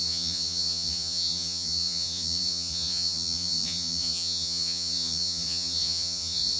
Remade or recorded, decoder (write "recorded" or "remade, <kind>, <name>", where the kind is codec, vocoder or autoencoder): remade, vocoder, Vocos